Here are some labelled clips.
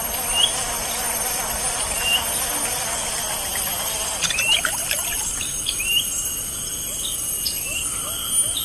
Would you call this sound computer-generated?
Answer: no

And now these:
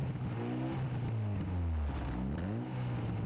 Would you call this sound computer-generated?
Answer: no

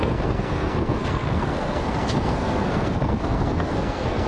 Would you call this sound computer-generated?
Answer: yes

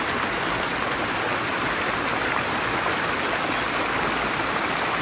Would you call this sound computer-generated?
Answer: no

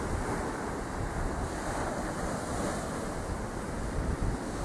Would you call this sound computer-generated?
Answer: no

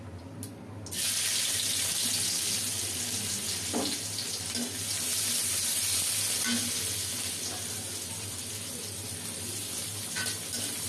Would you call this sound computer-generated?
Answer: no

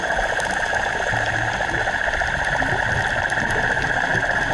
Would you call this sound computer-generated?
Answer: no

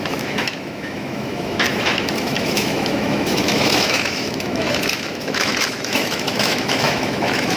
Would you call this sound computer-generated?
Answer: yes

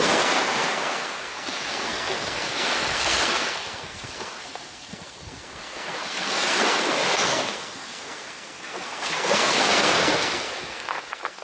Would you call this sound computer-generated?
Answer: yes